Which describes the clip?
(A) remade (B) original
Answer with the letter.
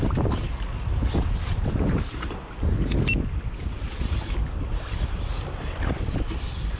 B